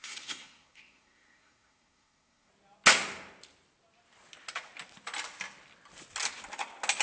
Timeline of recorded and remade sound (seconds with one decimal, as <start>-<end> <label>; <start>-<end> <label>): 0.0-2.5 remade; 2.5-7.0 recorded